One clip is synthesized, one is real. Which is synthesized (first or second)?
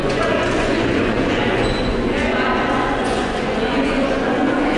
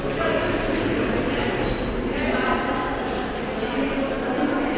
first